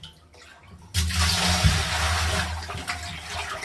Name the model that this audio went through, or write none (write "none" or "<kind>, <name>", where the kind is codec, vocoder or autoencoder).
none